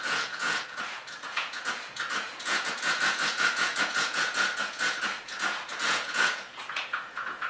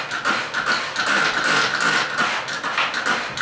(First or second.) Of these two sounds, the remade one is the first